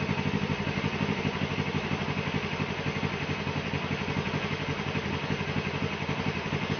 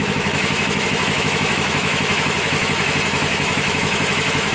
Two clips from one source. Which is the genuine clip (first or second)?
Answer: first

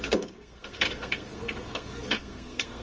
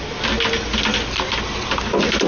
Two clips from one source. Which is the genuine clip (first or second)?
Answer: second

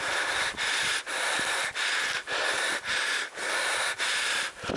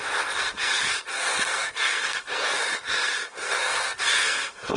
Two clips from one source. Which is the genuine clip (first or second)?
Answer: first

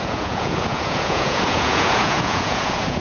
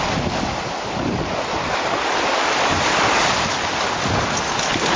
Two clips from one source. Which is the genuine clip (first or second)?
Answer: second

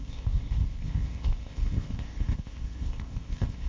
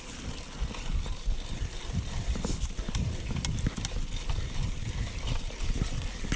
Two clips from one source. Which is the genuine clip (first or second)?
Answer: second